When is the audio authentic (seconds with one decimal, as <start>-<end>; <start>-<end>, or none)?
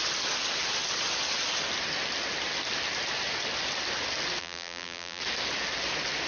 0.0-4.4; 5.2-6.3